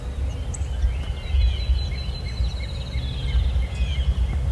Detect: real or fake real